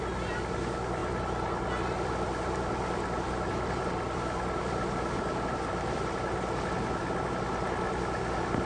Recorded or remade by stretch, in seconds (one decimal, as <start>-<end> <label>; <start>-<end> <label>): 0.0-8.7 recorded

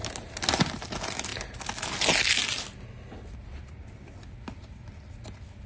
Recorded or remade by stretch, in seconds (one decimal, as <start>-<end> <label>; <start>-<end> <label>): 0.0-5.7 recorded

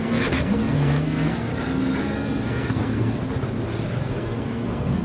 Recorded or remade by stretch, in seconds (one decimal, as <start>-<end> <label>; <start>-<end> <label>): 0.0-1.5 remade; 1.5-2.0 recorded; 2.0-3.2 remade; 3.2-4.0 recorded; 4.0-5.0 remade